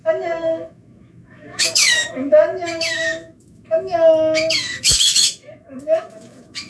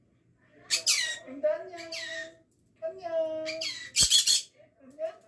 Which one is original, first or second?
second